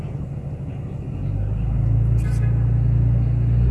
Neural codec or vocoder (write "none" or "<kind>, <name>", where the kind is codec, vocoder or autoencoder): none